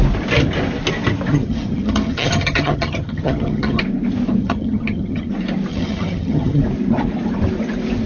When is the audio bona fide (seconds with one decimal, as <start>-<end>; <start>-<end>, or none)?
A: 0.0-1.3; 3.8-4.4; 5.3-5.7; 6.6-8.1